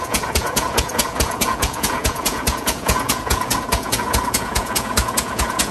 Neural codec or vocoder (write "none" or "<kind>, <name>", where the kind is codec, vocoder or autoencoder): vocoder, Vocos